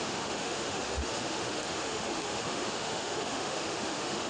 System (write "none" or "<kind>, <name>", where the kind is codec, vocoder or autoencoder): autoencoder, DAC-VAE